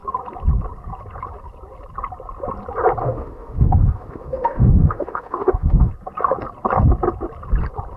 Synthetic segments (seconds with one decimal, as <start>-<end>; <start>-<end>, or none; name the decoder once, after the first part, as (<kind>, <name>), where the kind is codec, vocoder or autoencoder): 3.0-5.9 (autoencoder, DAC-VAE)